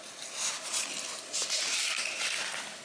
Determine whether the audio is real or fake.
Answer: real